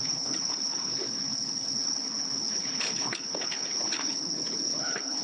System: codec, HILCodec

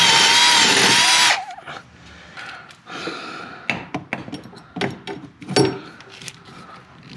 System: none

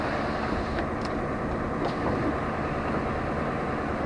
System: none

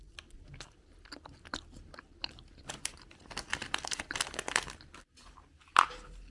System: none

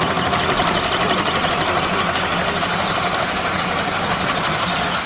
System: none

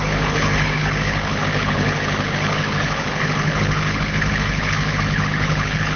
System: codec, HILCodec